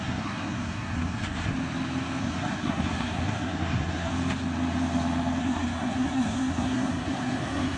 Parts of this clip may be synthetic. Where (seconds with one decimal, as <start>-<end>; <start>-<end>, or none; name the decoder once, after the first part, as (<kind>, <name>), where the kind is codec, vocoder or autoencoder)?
0.0-1.5 (codec, SNAC); 2.2-4.1; 5.4-7.8